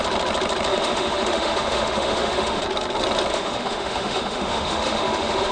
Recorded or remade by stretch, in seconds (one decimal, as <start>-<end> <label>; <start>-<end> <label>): 0.0-0.7 recorded; 0.7-2.6 remade; 2.6-3.3 recorded; 3.3-5.5 remade